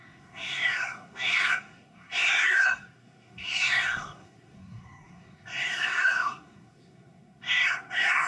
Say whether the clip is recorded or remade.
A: remade